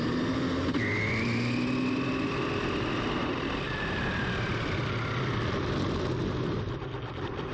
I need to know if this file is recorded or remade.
recorded